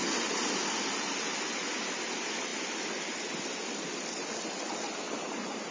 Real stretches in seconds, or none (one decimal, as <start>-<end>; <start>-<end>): 0.0-5.7